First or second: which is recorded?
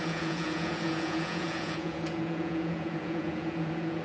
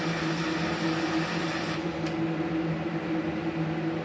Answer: second